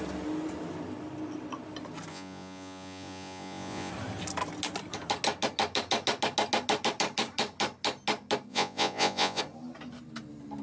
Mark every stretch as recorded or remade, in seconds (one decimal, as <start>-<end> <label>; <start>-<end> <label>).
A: 0.0-2.1 recorded; 2.1-3.9 remade; 3.9-8.5 recorded; 8.5-9.4 remade; 9.4-10.6 recorded